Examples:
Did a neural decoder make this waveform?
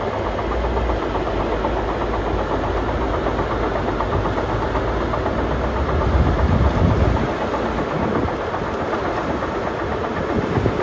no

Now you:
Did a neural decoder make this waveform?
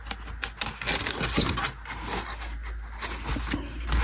no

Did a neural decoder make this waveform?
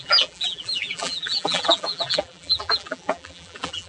yes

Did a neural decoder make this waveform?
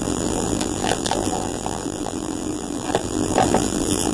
yes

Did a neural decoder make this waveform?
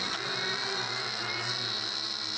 no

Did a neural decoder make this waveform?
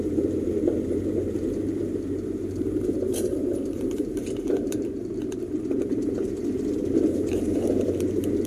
yes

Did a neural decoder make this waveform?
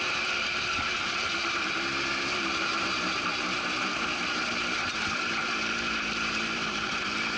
yes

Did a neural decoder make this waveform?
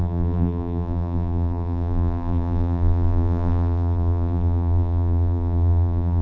yes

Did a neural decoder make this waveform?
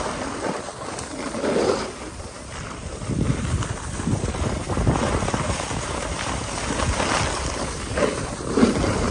no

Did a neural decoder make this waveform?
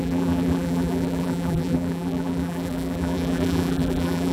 yes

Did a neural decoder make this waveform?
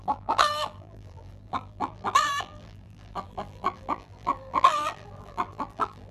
yes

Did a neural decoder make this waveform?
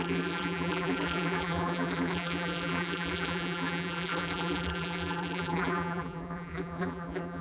yes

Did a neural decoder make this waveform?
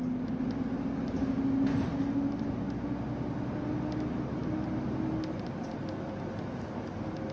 no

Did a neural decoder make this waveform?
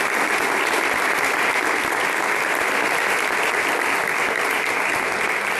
no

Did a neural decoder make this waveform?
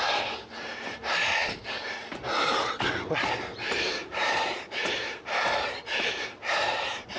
yes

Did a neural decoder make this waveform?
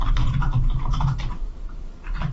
yes